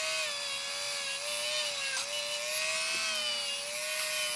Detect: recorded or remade recorded